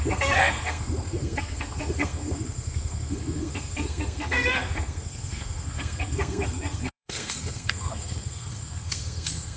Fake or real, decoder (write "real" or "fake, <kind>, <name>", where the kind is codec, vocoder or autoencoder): fake, codec, SNAC